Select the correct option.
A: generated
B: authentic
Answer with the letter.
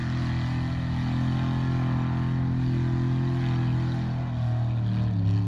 B